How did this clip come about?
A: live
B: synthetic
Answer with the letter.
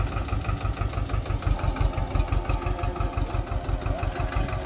A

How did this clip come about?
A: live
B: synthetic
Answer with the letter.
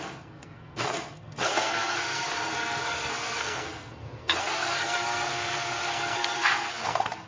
B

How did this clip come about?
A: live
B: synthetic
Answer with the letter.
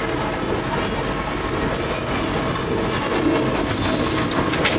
A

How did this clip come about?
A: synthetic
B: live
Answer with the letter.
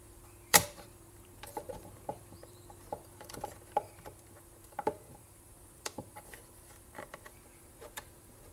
A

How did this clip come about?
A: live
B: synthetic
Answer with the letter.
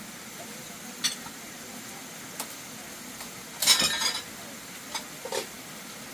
A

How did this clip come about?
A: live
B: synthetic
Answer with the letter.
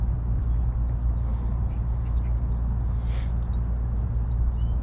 A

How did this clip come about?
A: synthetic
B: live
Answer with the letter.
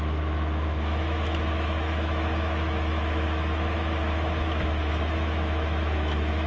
A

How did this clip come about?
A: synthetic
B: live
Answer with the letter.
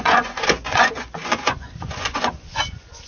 A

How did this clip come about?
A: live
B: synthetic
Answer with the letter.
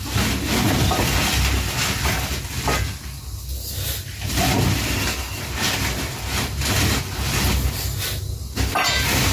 A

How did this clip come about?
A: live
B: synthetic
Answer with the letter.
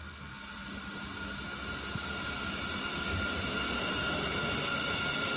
A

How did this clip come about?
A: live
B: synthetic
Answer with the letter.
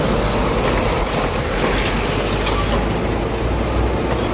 A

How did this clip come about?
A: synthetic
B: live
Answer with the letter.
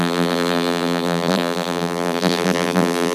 A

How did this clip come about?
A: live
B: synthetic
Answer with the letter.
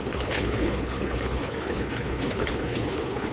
B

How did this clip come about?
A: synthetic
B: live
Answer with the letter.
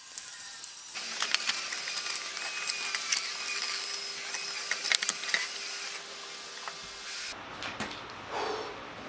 B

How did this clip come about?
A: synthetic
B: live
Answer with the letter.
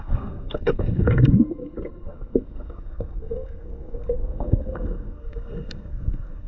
A